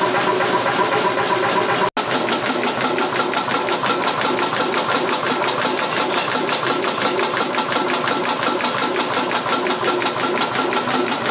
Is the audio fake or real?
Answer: real